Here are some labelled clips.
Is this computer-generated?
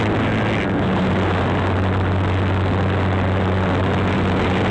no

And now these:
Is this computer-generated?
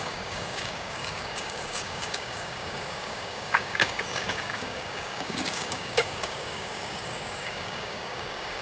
yes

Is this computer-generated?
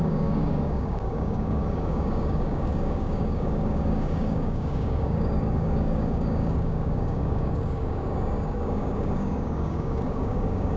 yes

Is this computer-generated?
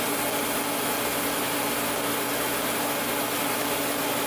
no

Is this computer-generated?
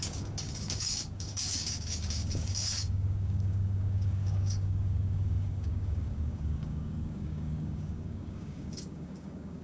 yes